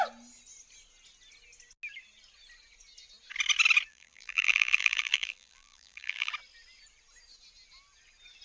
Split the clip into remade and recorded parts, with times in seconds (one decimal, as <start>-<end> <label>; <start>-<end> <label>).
0.0-3.9 recorded; 3.9-6.3 remade; 6.3-8.4 recorded

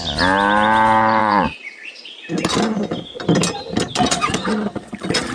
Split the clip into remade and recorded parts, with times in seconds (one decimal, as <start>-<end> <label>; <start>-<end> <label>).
0.0-1.2 recorded; 1.2-2.2 remade; 2.2-3.9 recorded; 3.9-5.3 remade

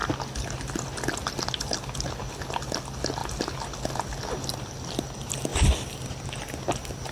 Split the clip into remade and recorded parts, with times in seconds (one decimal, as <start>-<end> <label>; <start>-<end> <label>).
0.0-5.5 recorded; 5.5-6.2 remade; 6.2-7.1 recorded